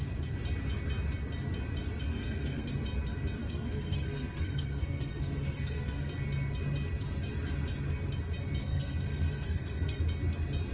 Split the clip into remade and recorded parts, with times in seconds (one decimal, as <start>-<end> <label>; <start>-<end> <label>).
0.0-2.1 recorded; 2.1-2.7 remade; 2.7-3.4 recorded; 3.4-6.1 remade; 6.1-8.6 recorded; 8.6-10.0 remade; 10.0-10.7 recorded